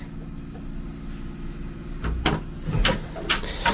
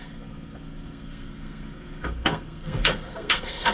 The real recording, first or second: first